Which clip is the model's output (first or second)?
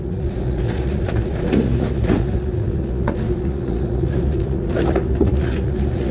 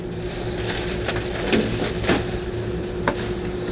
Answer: first